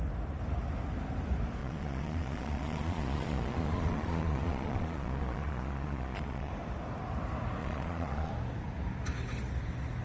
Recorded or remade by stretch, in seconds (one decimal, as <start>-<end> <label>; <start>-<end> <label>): 0.0-1.6 recorded; 1.6-6.5 remade; 6.5-7.6 recorded; 7.6-8.3 remade; 8.3-10.0 recorded